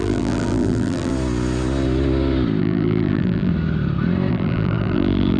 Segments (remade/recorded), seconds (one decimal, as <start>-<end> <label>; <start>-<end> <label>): 0.0-1.1 remade; 1.1-2.6 recorded; 2.6-3.5 remade; 3.5-4.3 recorded; 4.3-5.4 remade